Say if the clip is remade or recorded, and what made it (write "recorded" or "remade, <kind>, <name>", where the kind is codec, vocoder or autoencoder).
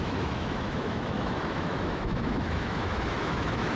remade, autoencoder, DAC-VAE